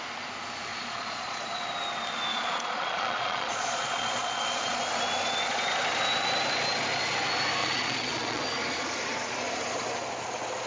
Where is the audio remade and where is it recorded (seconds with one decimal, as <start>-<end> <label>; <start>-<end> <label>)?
0.0-0.7 recorded; 0.7-1.6 remade; 1.6-2.3 recorded; 2.3-4.8 remade; 4.8-7.6 recorded; 7.6-8.4 remade; 8.4-10.7 recorded